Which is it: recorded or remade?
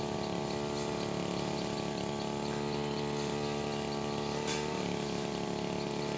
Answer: recorded